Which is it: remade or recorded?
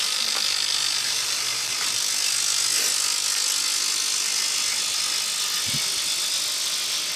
recorded